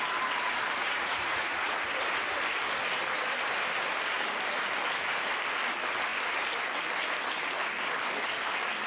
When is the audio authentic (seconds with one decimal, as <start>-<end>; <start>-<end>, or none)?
0.0-0.8; 1.8-8.9